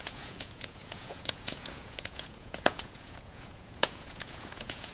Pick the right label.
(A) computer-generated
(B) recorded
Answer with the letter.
A